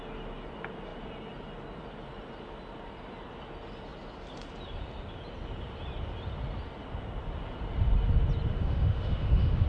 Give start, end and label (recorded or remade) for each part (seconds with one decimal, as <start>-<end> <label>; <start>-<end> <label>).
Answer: 0.0-8.5 recorded; 8.5-9.7 remade